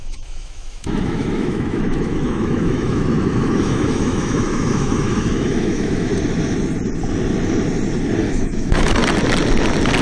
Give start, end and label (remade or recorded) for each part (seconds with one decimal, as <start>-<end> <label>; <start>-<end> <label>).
0.0-6.1 remade; 6.1-8.2 recorded; 8.2-9.0 remade; 9.0-10.0 recorded